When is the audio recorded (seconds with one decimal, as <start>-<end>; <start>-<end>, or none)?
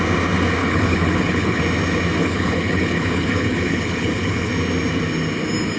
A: 0.0-0.6; 1.6-2.2; 4.5-5.8